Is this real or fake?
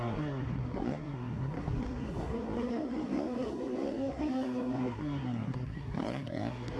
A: fake